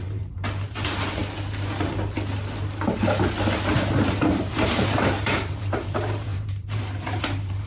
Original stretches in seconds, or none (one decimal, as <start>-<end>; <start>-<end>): 1.2-4.5

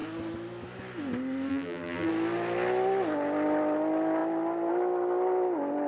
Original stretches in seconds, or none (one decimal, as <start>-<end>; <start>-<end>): 0.0-1.5; 2.1-5.9

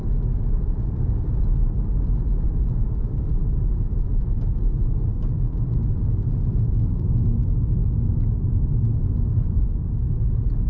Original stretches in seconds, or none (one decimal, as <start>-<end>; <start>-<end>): 0.0-10.7

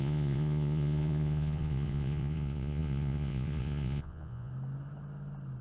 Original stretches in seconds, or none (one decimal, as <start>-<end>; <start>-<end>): 4.5-5.6

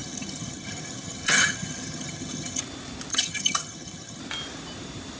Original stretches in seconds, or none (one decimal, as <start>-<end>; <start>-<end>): 2.6-3.1; 4.2-5.2

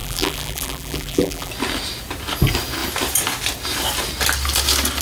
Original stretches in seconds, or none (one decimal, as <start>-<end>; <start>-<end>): 1.5-5.0

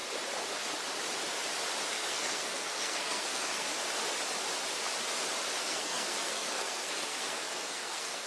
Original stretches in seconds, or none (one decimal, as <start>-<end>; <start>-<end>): 0.0-1.9; 3.7-5.6

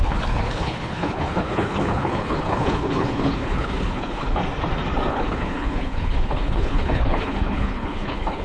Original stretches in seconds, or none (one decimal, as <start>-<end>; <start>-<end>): 4.4-5.1